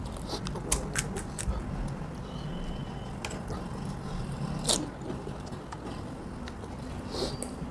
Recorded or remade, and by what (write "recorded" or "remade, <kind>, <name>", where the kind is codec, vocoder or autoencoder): recorded